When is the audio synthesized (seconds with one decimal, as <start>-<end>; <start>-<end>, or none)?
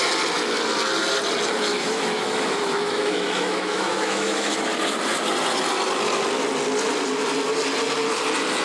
1.7-4.5